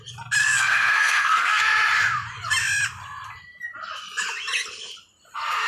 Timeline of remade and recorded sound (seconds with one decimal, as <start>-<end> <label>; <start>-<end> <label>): 0.0-0.4 recorded; 0.4-1.6 remade; 1.6-5.7 recorded